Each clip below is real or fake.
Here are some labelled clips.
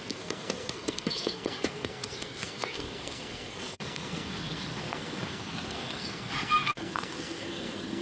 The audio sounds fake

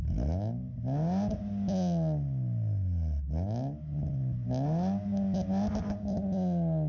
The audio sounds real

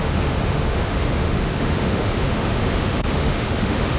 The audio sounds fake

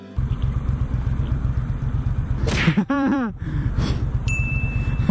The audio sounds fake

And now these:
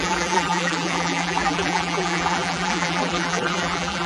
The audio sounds fake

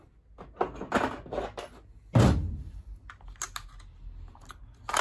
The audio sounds real